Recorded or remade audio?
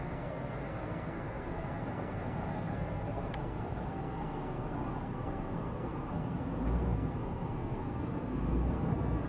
remade